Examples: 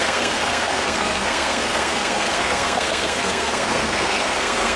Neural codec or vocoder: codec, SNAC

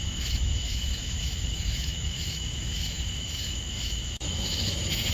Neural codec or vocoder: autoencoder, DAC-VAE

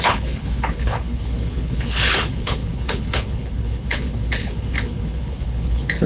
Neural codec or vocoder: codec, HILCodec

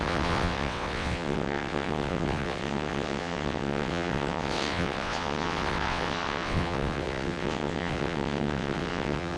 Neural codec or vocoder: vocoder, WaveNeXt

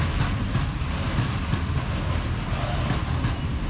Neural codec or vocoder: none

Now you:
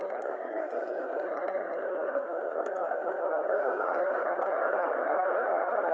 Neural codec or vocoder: codec, SNAC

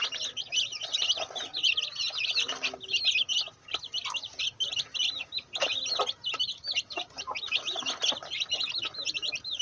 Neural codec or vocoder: none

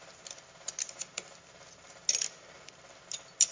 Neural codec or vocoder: none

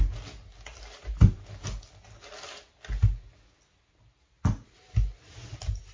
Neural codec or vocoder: none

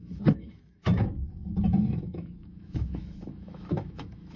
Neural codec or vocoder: autoencoder, DAC-VAE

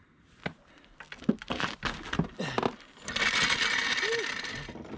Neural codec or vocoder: none